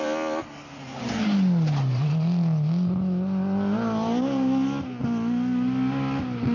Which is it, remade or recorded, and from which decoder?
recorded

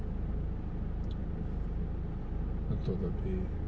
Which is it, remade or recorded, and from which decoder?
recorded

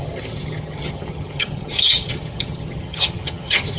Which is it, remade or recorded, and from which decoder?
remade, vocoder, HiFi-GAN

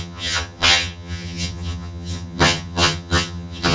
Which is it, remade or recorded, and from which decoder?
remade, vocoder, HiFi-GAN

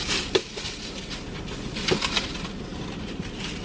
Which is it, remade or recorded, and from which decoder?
recorded